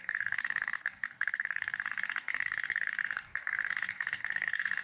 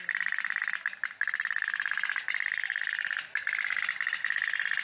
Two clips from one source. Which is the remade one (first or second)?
first